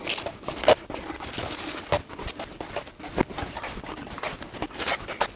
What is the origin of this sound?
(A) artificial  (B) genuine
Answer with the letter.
B